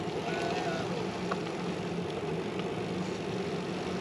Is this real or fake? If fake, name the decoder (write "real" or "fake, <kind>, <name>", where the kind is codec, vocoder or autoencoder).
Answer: real